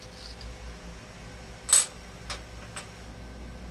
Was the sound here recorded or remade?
recorded